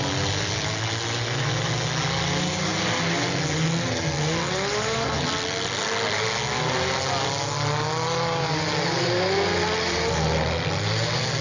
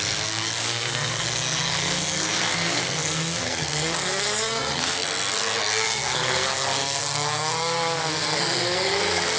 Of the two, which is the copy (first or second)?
second